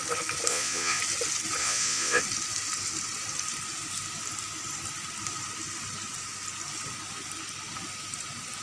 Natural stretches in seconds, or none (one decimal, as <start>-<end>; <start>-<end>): 0.0-0.5; 1.0-1.6; 2.2-8.6